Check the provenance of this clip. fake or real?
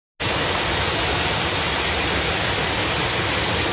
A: real